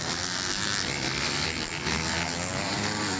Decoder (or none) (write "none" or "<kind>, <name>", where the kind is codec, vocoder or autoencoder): none